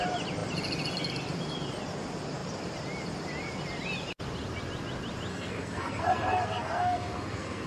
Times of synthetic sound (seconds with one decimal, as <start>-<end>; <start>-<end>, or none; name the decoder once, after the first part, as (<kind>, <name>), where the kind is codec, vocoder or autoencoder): 5.3-7.7 (codec, SNAC)